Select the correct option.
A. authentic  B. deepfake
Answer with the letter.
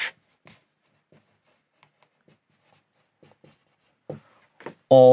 A